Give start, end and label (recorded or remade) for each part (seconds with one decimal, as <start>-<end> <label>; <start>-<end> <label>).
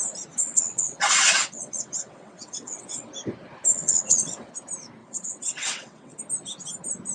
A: 0.0-0.4 recorded; 0.4-3.1 remade; 3.1-3.7 recorded; 3.7-4.5 remade; 4.5-5.0 recorded; 5.0-6.2 remade; 6.2-7.1 recorded